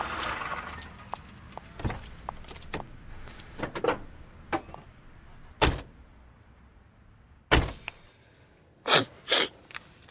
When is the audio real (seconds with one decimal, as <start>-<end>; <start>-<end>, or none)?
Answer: 0.0-3.1; 3.6-10.1